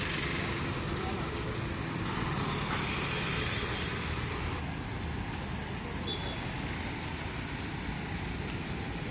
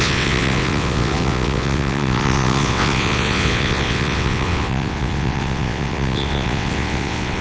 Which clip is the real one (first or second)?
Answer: first